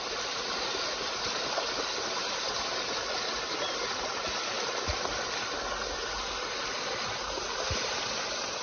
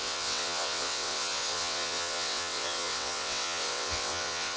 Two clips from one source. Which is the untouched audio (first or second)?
first